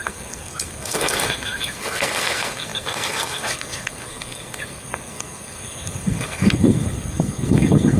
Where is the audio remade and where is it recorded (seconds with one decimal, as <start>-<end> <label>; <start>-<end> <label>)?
0.0-8.0 remade